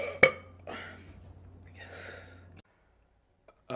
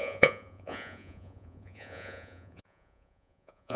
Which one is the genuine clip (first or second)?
first